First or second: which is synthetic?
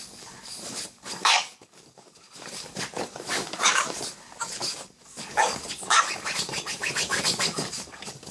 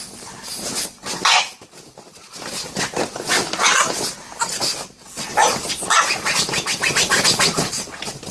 first